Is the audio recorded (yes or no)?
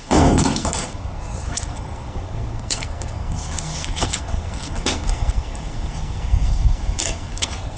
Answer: no